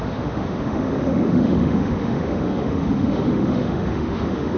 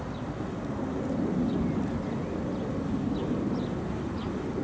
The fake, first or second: first